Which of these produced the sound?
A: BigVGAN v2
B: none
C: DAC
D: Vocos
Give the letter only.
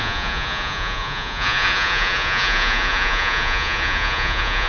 D